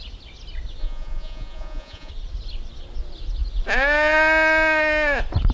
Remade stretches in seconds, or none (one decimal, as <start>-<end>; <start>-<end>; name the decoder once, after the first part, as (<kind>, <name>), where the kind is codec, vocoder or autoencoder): 0.8-2.1 (vocoder, Vocos)